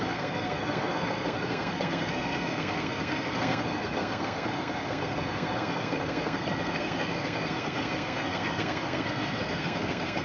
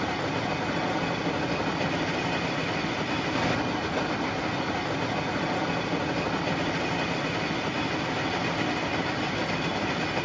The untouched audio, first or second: second